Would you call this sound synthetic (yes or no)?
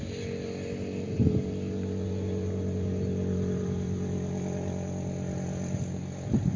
no